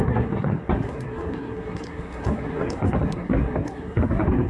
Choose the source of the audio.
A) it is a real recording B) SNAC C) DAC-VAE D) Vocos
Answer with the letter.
B